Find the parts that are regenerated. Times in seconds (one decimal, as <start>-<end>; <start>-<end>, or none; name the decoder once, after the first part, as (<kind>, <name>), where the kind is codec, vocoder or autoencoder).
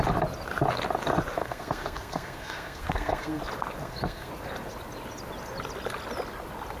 1.4-3.4 (codec, SNAC); 3.8-4.3